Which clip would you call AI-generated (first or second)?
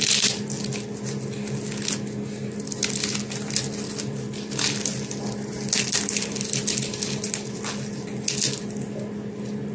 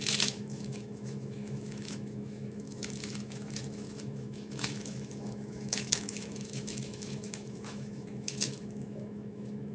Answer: second